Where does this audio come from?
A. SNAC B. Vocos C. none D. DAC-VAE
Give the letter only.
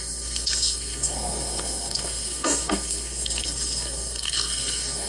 A